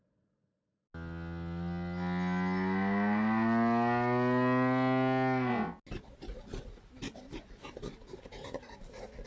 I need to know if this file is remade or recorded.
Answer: recorded